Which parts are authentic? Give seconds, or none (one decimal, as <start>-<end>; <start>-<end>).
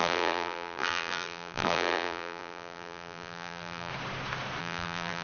3.9-4.6